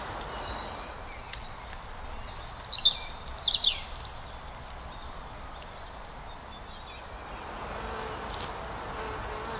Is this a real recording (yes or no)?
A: yes